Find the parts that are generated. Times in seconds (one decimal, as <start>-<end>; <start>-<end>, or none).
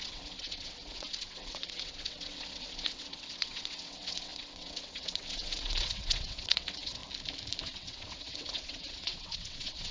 0.0-7.0; 7.6-9.9